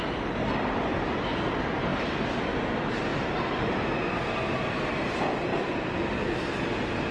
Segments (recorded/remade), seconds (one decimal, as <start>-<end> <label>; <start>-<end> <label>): 0.0-7.1 recorded